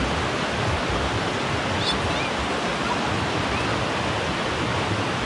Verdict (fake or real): real